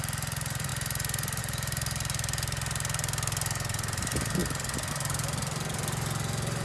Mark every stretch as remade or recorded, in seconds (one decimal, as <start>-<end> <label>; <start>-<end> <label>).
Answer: 0.0-0.7 remade; 0.7-1.4 recorded; 1.4-4.4 remade; 4.4-4.9 recorded; 4.9-6.6 remade